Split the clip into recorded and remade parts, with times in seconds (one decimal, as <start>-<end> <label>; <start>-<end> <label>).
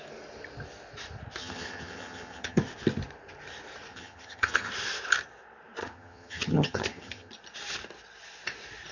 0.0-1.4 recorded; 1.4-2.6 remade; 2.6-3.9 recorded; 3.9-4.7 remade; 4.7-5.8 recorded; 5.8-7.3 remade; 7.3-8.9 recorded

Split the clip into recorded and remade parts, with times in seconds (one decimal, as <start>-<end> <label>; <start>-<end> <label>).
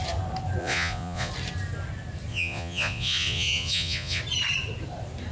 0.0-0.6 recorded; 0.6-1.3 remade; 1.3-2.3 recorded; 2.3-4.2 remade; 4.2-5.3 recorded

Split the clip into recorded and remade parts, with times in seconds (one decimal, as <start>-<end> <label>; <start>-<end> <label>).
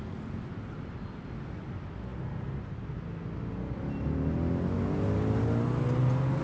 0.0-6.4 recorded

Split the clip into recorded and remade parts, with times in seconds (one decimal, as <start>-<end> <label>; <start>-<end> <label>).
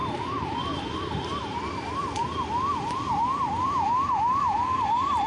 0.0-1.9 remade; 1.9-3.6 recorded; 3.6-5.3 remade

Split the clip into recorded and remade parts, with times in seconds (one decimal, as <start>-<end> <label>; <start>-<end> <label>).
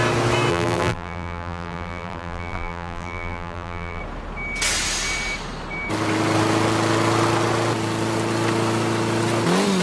0.0-0.5 recorded; 0.5-4.0 remade; 4.0-9.8 recorded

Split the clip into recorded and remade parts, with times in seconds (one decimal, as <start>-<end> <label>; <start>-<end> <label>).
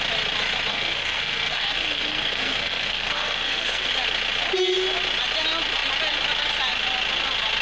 0.0-0.7 recorded; 0.7-3.9 remade; 3.9-7.6 recorded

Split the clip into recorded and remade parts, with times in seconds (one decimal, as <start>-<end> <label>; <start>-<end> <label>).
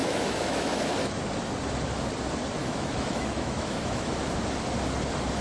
0.0-1.2 remade; 1.2-2.6 recorded; 2.6-4.1 remade; 4.1-5.4 recorded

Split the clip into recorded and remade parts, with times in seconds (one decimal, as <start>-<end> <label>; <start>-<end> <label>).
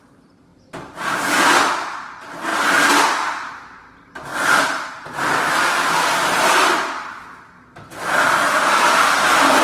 0.0-0.5 recorded; 0.5-1.2 remade; 1.2-2.5 recorded; 2.5-3.5 remade; 3.5-9.6 recorded